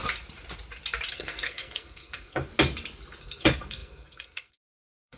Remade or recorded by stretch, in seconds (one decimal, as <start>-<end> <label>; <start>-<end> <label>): 0.0-1.1 recorded; 1.1-2.5 remade; 2.5-3.2 recorded; 3.2-5.2 remade